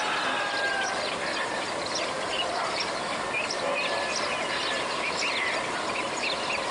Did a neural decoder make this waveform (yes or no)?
no